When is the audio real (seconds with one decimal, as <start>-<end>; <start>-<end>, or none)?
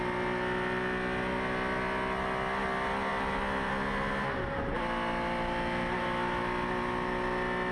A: 0.0-7.7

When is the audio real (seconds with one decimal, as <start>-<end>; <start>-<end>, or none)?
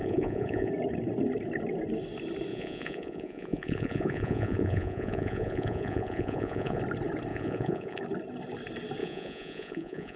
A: 0.7-2.5; 6.8-7.3; 8.0-9.0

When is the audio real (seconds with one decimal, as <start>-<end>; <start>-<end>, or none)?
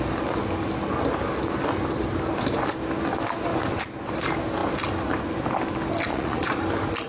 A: 0.0-6.1; 6.6-7.1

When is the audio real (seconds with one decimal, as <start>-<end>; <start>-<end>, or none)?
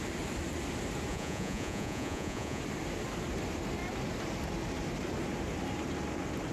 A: 0.0-1.1; 2.6-6.5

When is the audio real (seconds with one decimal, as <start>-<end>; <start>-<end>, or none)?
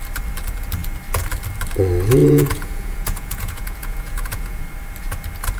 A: 0.0-2.2; 4.6-5.6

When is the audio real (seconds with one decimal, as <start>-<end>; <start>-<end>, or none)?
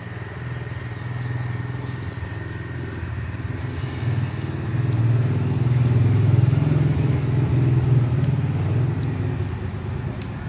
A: 0.0-10.5